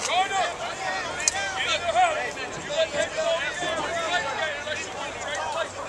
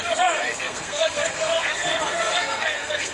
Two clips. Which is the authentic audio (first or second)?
first